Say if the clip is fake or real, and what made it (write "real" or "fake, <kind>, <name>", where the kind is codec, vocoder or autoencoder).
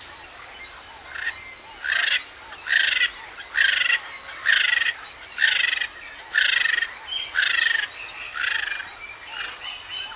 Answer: real